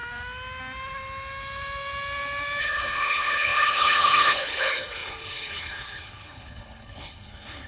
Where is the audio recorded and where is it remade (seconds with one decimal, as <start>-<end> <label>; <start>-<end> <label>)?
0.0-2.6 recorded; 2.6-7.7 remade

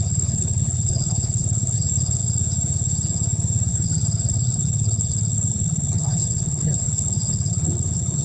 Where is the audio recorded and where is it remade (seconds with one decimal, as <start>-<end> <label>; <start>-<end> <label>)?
0.0-2.2 remade; 2.2-3.7 recorded; 3.7-8.2 remade

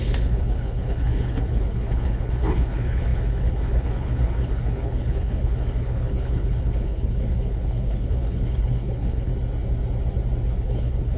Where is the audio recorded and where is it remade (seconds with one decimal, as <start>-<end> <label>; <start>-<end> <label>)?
0.0-9.3 remade; 9.3-10.5 recorded; 10.5-11.2 remade

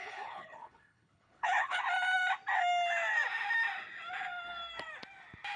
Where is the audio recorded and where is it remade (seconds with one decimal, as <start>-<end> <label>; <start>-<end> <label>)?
0.0-1.8 remade; 1.8-5.6 recorded

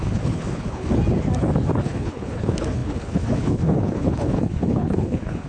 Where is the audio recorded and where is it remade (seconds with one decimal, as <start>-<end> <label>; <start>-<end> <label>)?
0.0-0.9 remade; 0.9-1.8 recorded; 1.8-5.5 remade

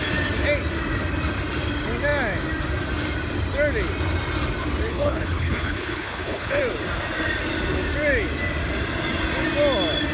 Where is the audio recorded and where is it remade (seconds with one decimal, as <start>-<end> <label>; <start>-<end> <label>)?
0.0-4.9 recorded; 4.9-6.6 remade; 6.6-10.1 recorded